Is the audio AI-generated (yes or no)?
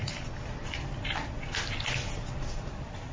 no